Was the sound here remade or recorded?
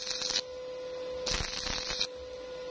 recorded